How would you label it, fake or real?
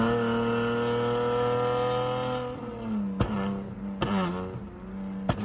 real